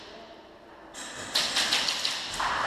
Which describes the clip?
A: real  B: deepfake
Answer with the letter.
A